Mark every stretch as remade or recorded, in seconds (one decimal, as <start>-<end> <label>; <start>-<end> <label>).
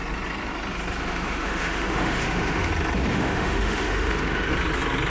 0.0-1.0 recorded; 1.0-2.7 remade; 2.7-3.1 recorded; 3.1-4.5 remade; 4.5-5.1 recorded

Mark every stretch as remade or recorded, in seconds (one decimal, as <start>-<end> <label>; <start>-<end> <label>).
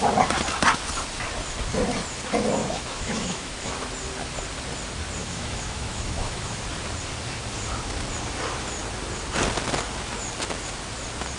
0.0-2.6 recorded; 2.6-3.8 remade; 3.8-5.2 recorded; 5.2-6.6 remade; 6.6-11.4 recorded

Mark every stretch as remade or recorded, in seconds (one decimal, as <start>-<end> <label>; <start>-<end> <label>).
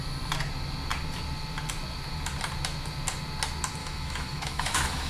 0.0-3.8 recorded; 3.8-5.1 remade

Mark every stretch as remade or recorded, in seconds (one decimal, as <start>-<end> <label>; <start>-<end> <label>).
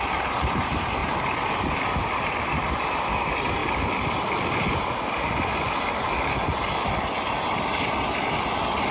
0.0-8.9 recorded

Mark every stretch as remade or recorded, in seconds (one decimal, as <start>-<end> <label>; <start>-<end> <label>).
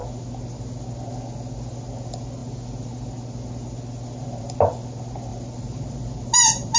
0.0-6.8 recorded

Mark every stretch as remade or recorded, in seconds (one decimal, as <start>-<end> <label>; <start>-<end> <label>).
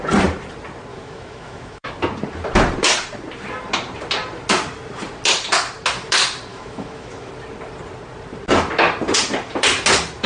0.0-0.9 recorded; 0.9-1.9 remade; 1.9-6.5 recorded; 6.5-7.3 remade; 7.3-10.3 recorded